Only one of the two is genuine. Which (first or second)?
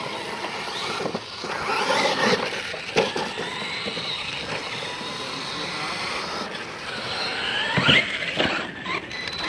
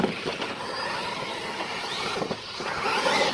first